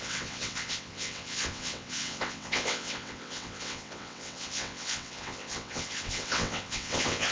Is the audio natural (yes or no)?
no